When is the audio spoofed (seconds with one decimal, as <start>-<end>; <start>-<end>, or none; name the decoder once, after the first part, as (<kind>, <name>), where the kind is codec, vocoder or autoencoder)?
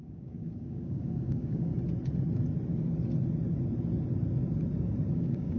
0.0-1.7 (codec, DAC); 5.1-5.6